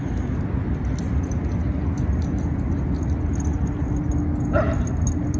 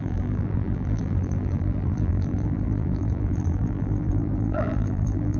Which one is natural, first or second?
first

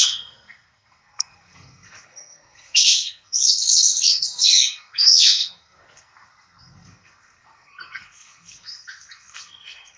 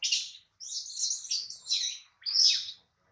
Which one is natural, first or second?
second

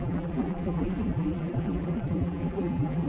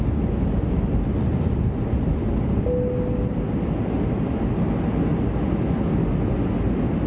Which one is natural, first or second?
second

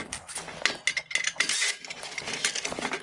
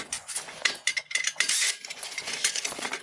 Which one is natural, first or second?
first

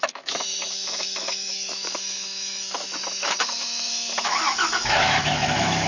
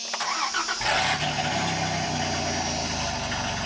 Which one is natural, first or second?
second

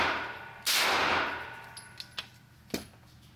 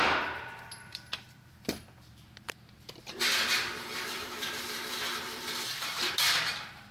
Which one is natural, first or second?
first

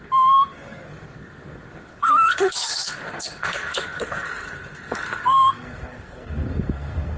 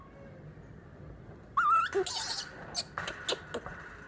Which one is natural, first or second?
second